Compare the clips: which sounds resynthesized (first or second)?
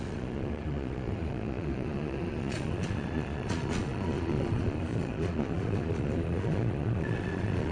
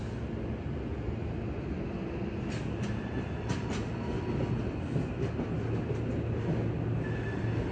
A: first